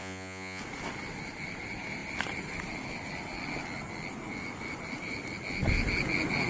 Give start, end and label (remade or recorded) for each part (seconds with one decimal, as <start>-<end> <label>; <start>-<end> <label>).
0.0-0.6 remade; 0.6-6.5 recorded